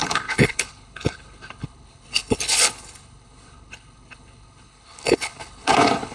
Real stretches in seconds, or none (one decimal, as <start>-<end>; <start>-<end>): none